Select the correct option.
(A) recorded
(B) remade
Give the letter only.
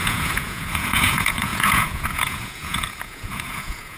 B